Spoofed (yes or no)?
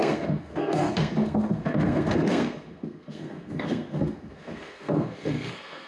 yes